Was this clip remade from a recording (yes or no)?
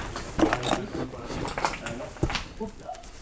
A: no